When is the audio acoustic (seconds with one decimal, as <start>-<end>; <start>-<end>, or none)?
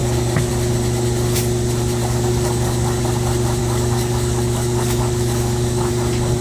0.5-2.0; 3.0-3.6; 5.9-6.4